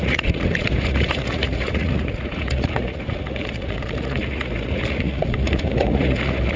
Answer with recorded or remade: remade